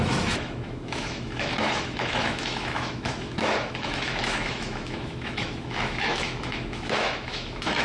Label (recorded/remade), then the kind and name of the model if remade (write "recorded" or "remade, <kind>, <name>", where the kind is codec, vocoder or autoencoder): remade, autoencoder, DAC-VAE